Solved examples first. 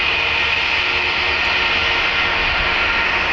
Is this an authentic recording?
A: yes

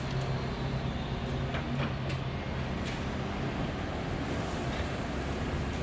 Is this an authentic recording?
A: yes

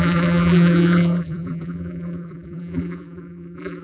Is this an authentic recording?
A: no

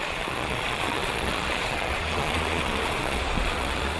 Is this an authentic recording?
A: no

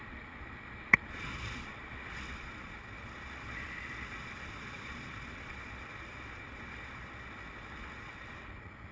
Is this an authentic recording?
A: no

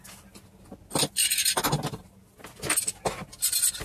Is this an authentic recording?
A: yes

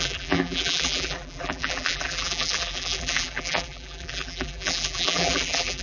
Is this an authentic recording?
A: no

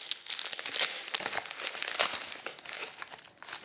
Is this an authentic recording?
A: yes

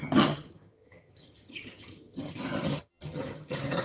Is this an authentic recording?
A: no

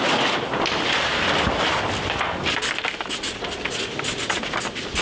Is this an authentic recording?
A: yes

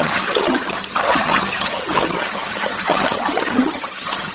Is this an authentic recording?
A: no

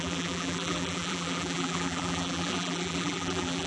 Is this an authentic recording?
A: no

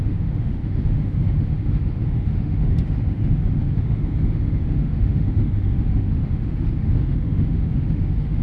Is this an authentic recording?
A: no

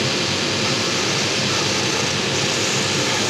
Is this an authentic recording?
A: yes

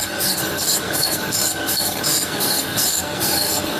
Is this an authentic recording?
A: no